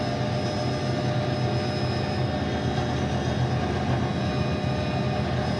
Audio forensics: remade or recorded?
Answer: recorded